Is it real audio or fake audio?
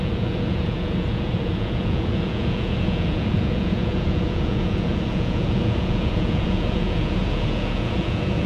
fake